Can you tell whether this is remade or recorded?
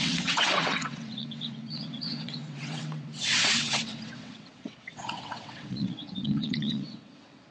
remade